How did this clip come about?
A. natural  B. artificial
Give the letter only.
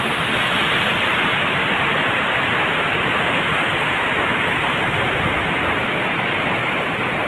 A